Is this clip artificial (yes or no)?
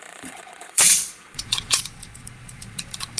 yes